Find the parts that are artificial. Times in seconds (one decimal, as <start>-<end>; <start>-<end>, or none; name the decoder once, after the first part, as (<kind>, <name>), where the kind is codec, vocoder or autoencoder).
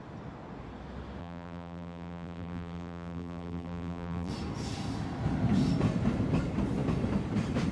1.2-4.3 (vocoder, BigVGAN v2)